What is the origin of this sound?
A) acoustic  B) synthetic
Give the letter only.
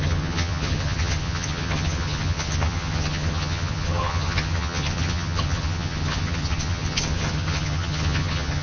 B